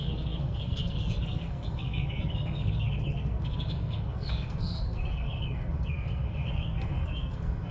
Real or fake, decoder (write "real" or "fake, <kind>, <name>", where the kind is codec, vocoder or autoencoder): fake, codec, SNAC